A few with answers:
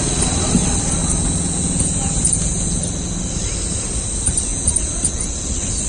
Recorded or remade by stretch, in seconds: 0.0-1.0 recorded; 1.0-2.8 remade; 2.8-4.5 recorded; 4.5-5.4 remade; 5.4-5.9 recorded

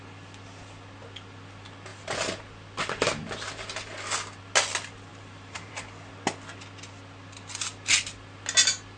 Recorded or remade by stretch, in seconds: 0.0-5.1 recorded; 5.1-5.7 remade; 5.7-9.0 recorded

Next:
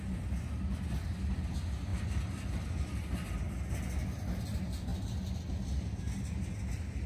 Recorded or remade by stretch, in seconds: 0.0-7.1 recorded

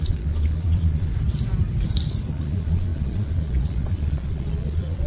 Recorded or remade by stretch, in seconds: 0.0-1.1 remade; 1.1-2.3 recorded; 2.3-5.1 remade